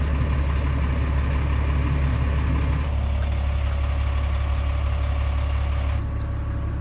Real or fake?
real